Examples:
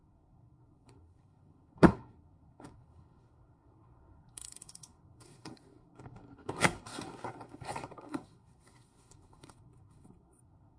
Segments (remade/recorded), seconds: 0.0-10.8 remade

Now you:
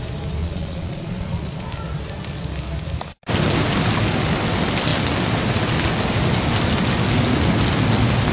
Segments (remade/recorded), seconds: 0.0-0.4 recorded; 0.4-1.7 remade; 1.7-8.3 recorded

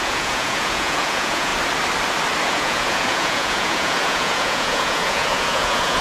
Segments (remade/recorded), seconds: 0.0-1.5 remade; 1.5-2.5 recorded; 2.5-6.0 remade

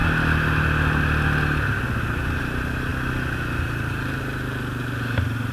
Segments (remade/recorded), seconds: 0.0-5.5 recorded

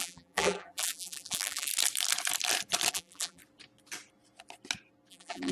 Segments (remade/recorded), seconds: 0.0-1.7 remade; 1.7-2.9 recorded; 2.9-3.4 remade; 3.4-5.1 recorded; 5.1-5.5 remade

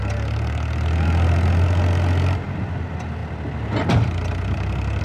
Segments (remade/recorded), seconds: 0.0-5.0 recorded